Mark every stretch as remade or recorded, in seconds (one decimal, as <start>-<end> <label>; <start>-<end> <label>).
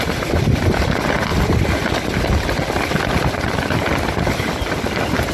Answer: 0.0-5.3 recorded